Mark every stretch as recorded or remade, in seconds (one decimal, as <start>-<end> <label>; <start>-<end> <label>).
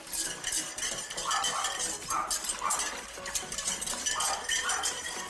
0.0-1.2 remade; 1.2-4.4 recorded; 4.4-5.3 remade